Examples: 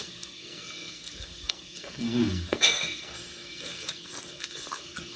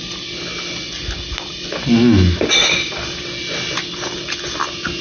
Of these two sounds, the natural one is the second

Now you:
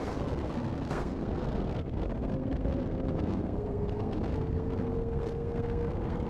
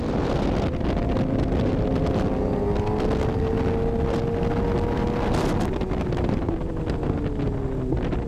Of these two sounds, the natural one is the second